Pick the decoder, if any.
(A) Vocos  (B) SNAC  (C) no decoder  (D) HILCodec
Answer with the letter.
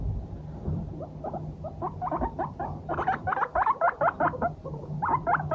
C